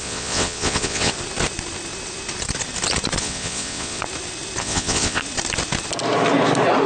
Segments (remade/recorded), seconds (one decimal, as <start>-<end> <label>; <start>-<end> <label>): 0.0-1.1 remade; 1.1-3.2 recorded; 3.2-4.0 remade; 4.0-4.6 recorded; 4.6-5.2 remade; 5.2-6.9 recorded